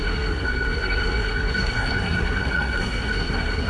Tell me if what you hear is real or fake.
fake